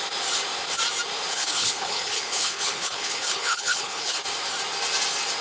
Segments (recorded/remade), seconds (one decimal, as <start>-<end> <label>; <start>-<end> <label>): 0.0-1.3 recorded; 1.3-4.2 remade; 4.2-5.4 recorded